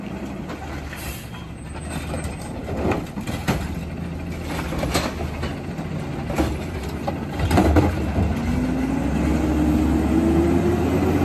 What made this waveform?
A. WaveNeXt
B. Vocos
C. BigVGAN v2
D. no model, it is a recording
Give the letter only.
D